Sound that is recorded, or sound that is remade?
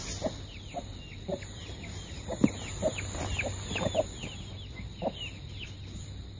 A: recorded